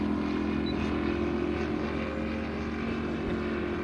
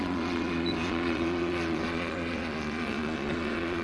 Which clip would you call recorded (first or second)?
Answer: first